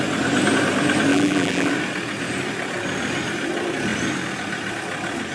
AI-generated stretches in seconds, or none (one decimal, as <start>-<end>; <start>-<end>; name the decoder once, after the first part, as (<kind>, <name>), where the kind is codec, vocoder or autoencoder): 1.1-1.7 (vocoder, BigVGAN v2)

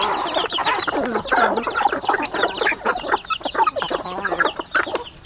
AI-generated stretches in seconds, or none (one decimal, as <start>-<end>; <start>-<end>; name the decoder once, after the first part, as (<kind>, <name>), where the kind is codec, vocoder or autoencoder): 0.0-0.6 (vocoder, BigVGAN v2); 1.2-2.9

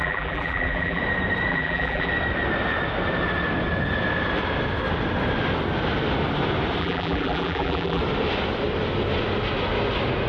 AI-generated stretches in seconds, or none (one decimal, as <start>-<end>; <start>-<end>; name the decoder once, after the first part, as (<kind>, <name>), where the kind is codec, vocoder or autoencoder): 0.0-1.0 (vocoder, BigVGAN v2); 1.5-2.1; 6.8-8.0